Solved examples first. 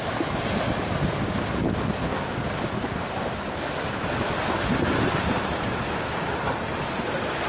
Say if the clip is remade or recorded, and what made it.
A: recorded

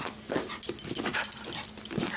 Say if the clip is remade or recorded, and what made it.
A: recorded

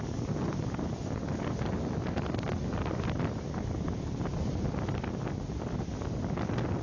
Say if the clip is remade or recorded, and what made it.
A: recorded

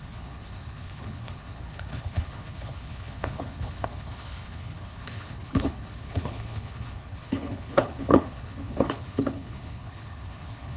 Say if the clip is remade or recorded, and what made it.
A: remade, codec, HILCodec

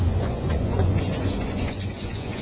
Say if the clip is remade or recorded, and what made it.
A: remade, vocoder, Vocos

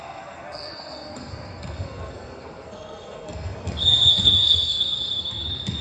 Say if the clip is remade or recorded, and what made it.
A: remade, codec, SNAC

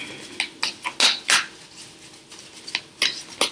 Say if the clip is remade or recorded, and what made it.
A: recorded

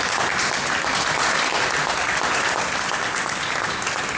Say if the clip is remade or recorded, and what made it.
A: recorded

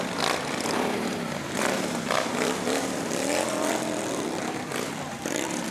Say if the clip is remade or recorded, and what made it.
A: remade, vocoder, BigVGAN v2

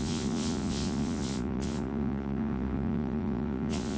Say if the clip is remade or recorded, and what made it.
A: remade, vocoder, Vocos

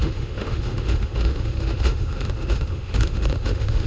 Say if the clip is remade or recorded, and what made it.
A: remade, autoencoder, DAC-VAE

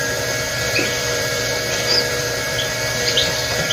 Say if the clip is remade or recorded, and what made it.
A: remade, vocoder, BigVGAN v2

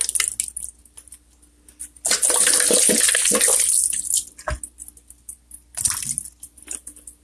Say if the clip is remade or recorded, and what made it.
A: recorded